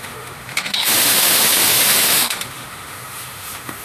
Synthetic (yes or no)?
yes